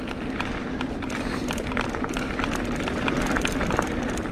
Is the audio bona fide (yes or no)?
yes